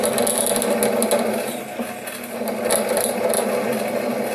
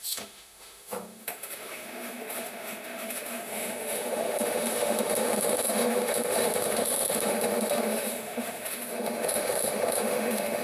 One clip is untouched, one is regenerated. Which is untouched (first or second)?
first